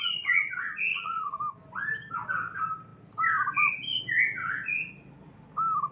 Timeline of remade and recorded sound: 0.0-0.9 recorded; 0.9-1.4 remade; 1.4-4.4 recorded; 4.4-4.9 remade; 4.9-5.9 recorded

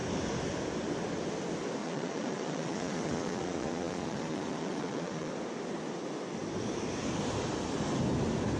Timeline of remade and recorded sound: 0.0-1.8 recorded; 1.8-5.3 remade; 5.3-8.6 recorded

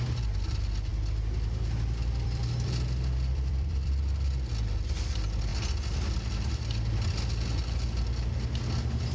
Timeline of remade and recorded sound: 0.0-0.9 recorded; 0.9-4.0 remade; 4.0-9.1 recorded

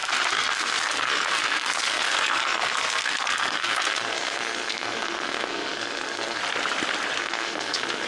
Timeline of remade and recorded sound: 0.0-6.4 remade; 6.4-7.2 recorded; 7.2-8.1 remade